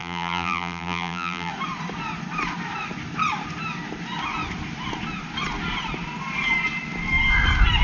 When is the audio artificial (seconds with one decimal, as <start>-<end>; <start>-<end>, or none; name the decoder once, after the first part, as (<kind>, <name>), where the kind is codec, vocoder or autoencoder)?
0.0-1.5 (vocoder, BigVGAN v2)